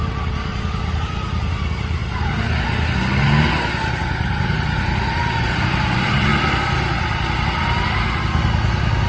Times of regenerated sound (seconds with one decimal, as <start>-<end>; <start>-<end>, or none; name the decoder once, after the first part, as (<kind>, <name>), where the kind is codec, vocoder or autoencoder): 0.0-2.0 (vocoder, BigVGAN v2); 4.0-6.3